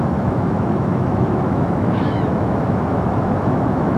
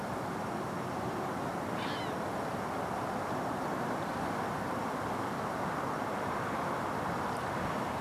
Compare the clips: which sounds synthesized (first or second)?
first